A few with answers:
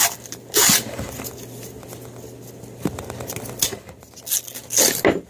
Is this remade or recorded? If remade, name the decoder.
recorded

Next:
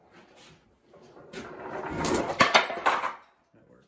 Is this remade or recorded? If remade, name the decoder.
recorded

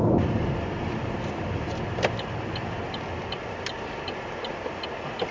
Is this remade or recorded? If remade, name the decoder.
recorded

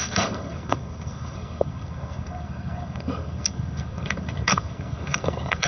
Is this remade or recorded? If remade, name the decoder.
remade, codec, SNAC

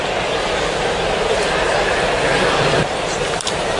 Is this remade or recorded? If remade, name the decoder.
recorded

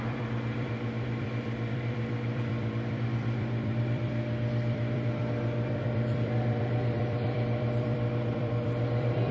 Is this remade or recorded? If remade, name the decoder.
remade, vocoder, BigVGAN v2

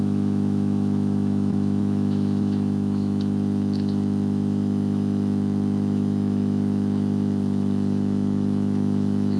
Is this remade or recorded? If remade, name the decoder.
remade, autoencoder, DAC-VAE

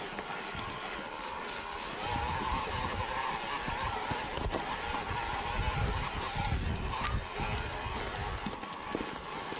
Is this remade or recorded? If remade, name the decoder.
recorded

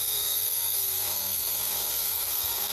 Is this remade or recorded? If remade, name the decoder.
remade, codec, SNAC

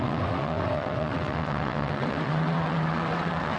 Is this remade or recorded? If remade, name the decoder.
remade, vocoder, WaveNeXt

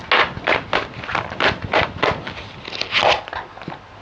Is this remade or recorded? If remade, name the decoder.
recorded